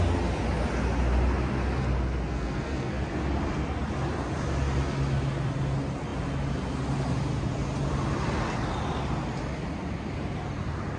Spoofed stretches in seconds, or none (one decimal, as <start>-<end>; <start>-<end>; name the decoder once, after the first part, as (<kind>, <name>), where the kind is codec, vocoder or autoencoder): 2.3-3.0 (codec, SNAC)